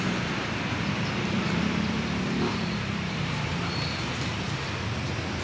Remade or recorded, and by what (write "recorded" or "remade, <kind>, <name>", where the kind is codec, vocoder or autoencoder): remade, vocoder, BigVGAN v2